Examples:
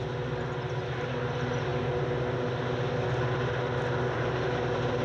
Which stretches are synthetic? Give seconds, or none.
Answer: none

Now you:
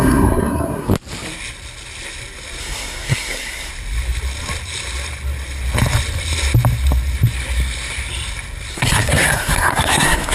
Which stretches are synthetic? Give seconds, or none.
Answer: 0.0-0.9 (codec, SNAC); 2.6-3.7; 8.7-10.3